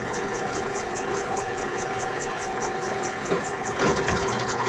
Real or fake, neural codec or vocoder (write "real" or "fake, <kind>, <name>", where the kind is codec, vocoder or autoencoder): fake, codec, HILCodec